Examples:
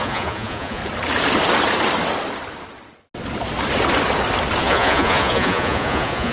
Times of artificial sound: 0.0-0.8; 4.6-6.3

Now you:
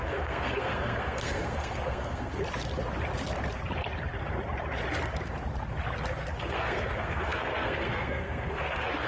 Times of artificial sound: 0.0-2.4; 6.4-9.1